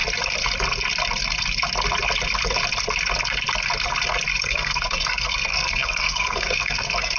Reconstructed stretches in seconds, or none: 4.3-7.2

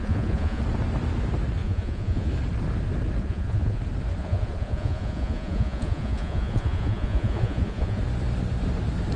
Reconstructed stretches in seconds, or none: 0.0-0.6; 1.6-2.3; 3.2-3.8; 4.2-8.0

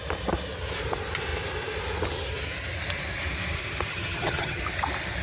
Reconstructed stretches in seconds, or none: 3.9-4.6

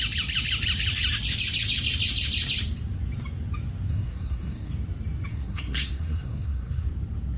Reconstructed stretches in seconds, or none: 3.9-4.7; 5.3-6.9

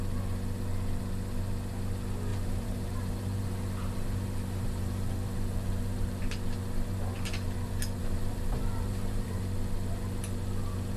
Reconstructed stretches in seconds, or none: 2.3-6.2; 8.0-9.4

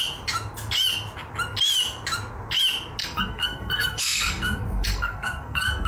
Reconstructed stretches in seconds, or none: 3.0-5.9